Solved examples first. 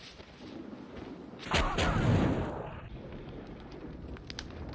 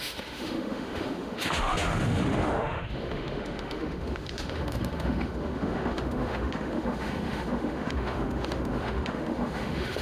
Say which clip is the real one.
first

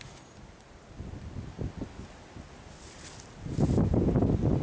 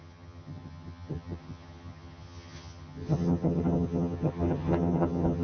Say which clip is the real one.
first